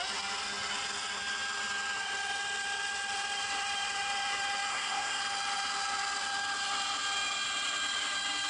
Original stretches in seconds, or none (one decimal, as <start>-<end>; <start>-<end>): 0.0-4.7; 5.2-8.5